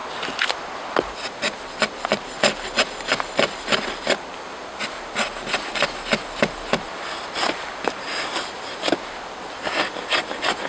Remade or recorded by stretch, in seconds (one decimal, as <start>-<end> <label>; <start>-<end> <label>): 0.0-10.7 recorded